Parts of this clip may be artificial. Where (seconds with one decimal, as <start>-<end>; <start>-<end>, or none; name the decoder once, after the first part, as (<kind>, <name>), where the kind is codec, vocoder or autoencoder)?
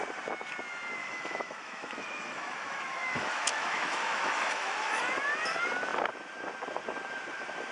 1.0-5.0 (autoencoder, DAC-VAE)